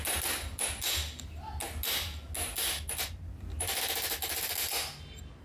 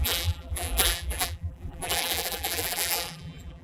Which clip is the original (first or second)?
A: first